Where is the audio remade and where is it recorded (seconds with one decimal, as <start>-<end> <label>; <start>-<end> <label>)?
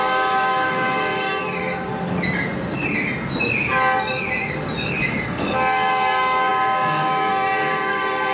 0.0-1.6 remade; 1.6-5.0 recorded; 5.0-8.3 remade